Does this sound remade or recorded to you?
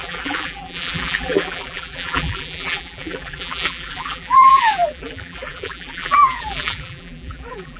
remade